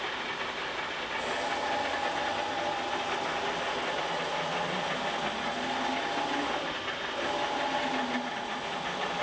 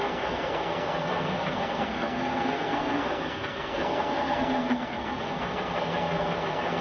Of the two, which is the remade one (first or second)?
second